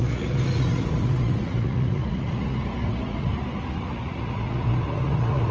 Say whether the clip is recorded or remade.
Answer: remade